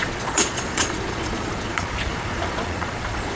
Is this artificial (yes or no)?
yes